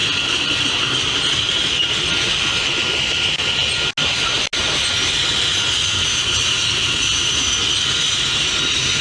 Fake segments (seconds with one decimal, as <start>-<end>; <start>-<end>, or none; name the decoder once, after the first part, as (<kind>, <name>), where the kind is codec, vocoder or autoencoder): none

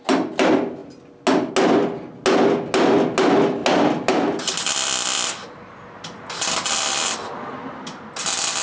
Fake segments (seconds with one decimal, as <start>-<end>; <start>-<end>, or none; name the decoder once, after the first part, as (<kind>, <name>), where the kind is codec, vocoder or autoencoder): none